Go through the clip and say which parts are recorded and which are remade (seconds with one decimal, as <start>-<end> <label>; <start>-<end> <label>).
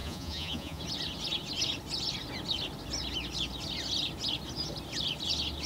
0.0-0.8 remade; 0.8-5.7 recorded